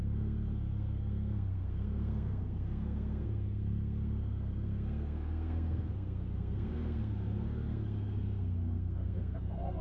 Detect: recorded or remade remade